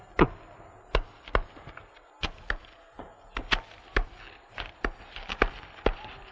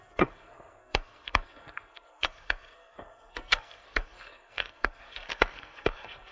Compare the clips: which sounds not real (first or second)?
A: second